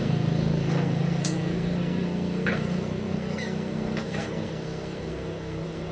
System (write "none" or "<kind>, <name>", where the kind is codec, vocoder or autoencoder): codec, SNAC